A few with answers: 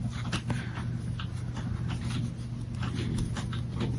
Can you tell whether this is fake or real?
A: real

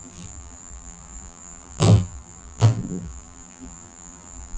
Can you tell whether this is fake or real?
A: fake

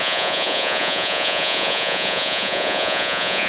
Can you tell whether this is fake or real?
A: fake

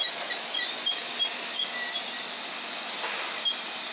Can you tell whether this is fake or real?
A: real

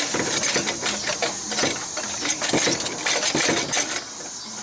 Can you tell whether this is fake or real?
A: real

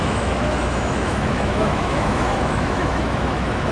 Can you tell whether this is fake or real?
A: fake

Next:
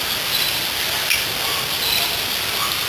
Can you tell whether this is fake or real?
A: real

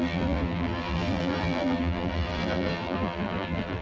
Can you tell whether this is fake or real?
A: fake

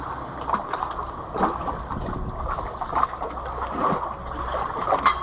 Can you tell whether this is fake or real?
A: real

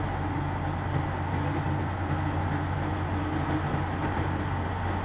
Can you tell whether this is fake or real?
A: real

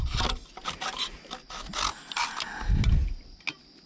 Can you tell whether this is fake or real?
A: real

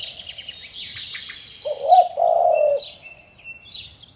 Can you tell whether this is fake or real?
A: real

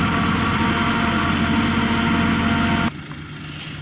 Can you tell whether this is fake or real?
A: real